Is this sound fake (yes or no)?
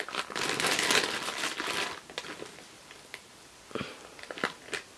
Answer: no